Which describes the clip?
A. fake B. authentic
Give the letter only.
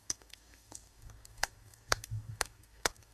A